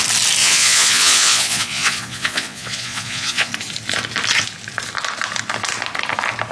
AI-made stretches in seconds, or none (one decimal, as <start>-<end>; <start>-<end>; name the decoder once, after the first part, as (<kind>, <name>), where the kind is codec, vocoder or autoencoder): 0.4-3.5 (vocoder, Vocos)